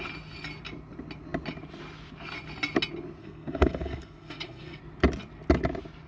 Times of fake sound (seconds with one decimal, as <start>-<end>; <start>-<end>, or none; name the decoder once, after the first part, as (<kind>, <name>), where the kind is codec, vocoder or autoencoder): 3.2-4.8 (codec, SNAC)